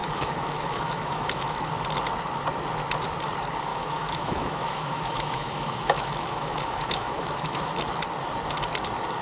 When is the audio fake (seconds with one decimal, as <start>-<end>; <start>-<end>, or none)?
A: 0.0-1.7; 3.7-7.7